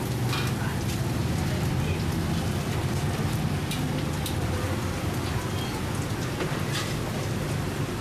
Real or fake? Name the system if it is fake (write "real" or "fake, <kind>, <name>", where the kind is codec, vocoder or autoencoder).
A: real